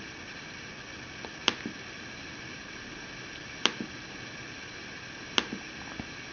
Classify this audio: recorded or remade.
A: recorded